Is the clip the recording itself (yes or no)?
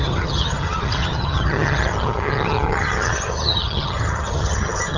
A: no